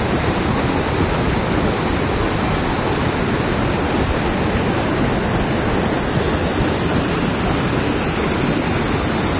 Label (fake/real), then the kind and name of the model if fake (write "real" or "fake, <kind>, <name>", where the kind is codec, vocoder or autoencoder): real